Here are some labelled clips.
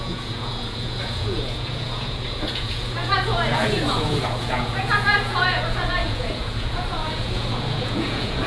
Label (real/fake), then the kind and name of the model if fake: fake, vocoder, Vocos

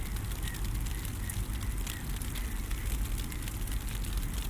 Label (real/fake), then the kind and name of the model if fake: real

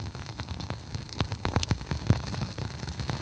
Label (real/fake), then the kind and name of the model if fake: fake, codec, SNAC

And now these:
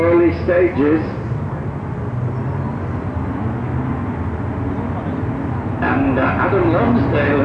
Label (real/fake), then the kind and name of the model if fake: real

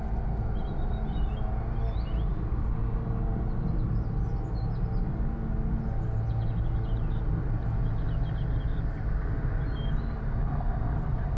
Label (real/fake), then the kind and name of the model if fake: real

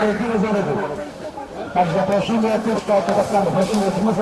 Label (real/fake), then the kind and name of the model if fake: fake, codec, SNAC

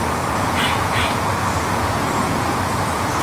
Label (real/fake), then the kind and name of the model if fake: fake, vocoder, Vocos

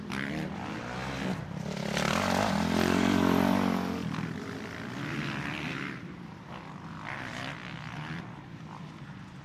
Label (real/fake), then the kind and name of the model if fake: real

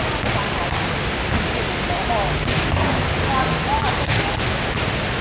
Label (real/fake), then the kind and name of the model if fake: real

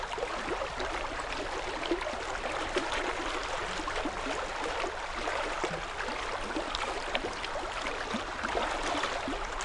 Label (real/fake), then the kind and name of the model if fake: real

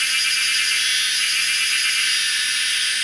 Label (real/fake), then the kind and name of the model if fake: real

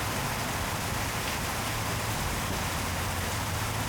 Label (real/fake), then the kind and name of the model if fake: real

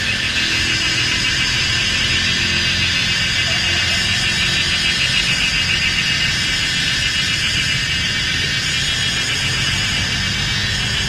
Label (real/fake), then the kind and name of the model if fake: real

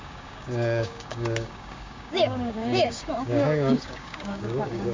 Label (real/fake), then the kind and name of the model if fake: fake, codec, DAC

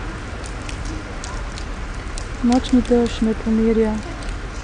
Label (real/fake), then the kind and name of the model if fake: real